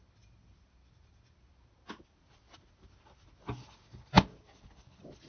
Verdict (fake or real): real